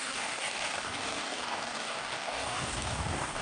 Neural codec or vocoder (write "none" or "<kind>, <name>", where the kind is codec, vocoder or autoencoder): codec, DAC